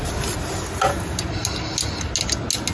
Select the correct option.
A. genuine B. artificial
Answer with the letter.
A